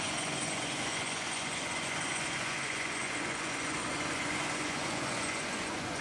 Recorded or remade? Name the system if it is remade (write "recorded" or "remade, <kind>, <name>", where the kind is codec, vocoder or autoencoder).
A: remade, vocoder, Vocos